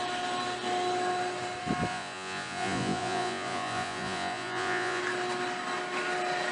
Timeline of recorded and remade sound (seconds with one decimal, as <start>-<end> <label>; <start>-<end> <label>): 0.0-1.9 recorded; 1.9-5.0 remade; 5.0-6.5 recorded

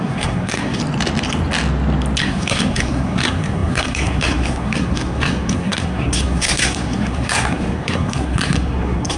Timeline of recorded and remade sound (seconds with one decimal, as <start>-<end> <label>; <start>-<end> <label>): 0.0-0.8 remade; 0.8-2.2 recorded; 2.2-9.2 remade

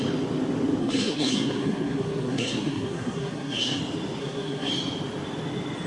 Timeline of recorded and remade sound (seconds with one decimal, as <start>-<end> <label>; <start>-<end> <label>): 0.0-0.8 recorded; 0.8-3.8 remade; 3.8-4.2 recorded; 4.2-4.7 remade; 4.7-5.9 recorded